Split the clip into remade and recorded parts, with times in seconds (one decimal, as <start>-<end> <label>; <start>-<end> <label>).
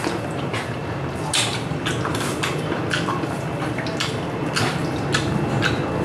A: 0.0-6.0 recorded